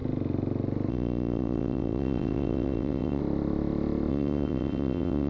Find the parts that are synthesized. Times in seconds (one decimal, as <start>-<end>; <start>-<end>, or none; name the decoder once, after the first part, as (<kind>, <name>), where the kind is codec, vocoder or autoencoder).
0.9-3.2 (vocoder, WaveNeXt); 4.1-5.3